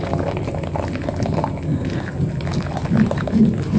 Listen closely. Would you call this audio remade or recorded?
recorded